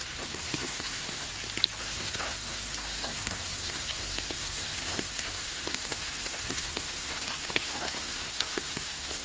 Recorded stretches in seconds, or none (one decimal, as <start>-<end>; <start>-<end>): 1.3-1.8